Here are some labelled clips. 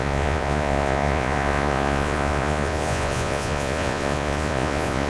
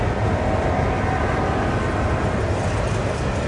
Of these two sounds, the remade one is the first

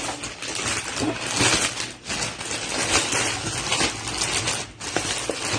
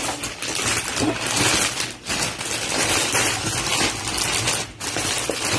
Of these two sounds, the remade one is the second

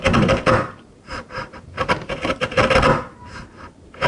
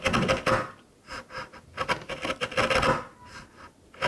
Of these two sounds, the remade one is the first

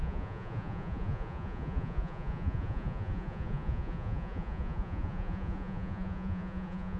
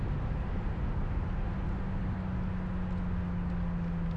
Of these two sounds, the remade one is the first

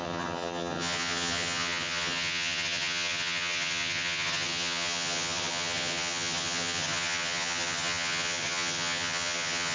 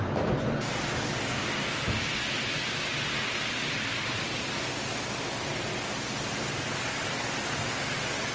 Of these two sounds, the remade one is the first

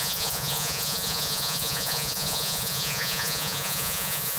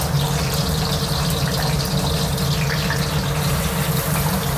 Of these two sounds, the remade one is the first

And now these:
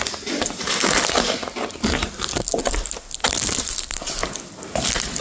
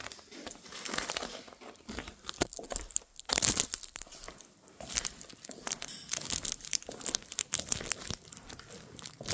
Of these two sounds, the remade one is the second